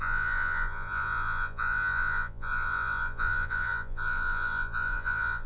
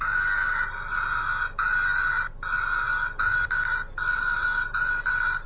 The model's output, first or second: first